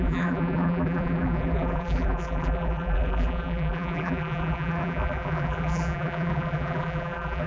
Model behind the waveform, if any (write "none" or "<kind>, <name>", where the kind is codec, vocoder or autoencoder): vocoder, BigVGAN v2